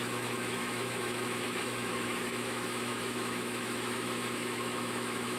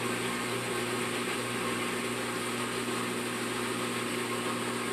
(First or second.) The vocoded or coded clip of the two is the first